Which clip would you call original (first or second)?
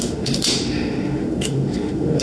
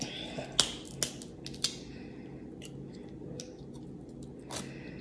second